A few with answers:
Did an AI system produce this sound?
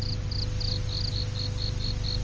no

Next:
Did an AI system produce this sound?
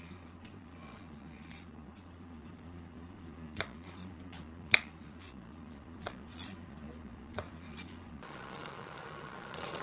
yes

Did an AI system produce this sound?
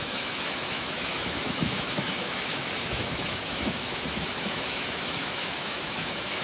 yes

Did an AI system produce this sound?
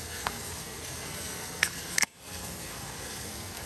yes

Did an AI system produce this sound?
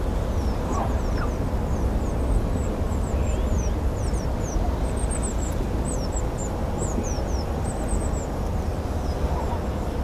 no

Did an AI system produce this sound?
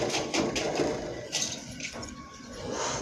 yes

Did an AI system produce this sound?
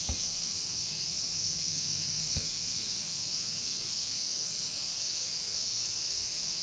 yes